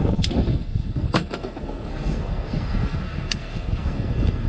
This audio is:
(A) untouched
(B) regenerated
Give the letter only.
B